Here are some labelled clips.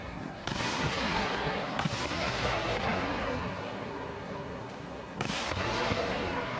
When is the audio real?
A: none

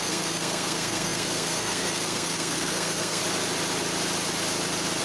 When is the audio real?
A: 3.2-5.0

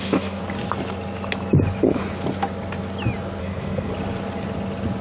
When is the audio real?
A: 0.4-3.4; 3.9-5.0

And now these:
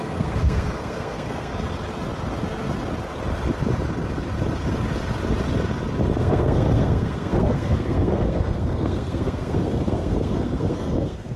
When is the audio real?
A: 1.5-6.2

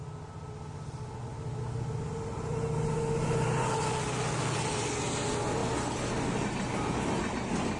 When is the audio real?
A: 0.0-7.8

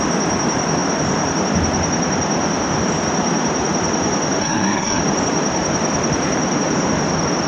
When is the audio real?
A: 0.0-4.4; 5.0-7.5